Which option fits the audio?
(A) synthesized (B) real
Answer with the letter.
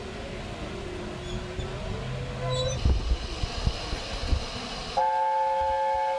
B